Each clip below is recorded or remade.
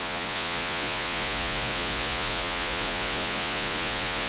remade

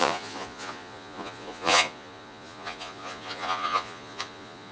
remade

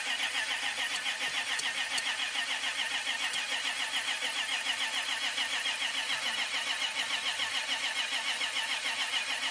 recorded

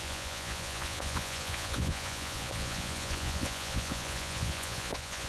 remade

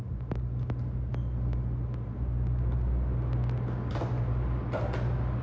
recorded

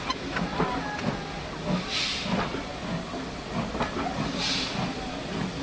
recorded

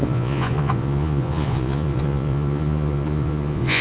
remade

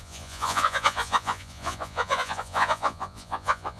remade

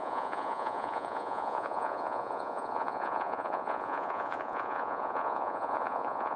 remade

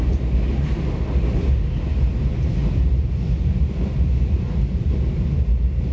recorded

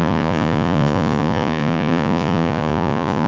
remade